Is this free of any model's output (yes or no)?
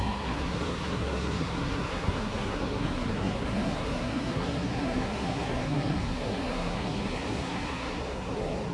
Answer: no